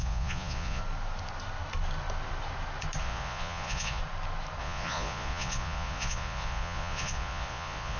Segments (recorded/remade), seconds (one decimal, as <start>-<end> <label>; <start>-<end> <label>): 0.0-0.8 remade; 0.8-3.0 recorded; 3.0-4.0 remade; 4.0-4.6 recorded; 4.6-8.0 remade